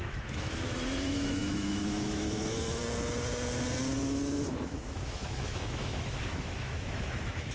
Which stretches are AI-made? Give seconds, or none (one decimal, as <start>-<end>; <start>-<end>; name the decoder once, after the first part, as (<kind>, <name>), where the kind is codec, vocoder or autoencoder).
0.0-2.8 (autoencoder, DAC-VAE); 4.0-7.5